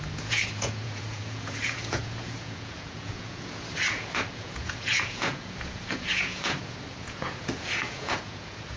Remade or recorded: remade